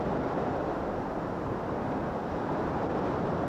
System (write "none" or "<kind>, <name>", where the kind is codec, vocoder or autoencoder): none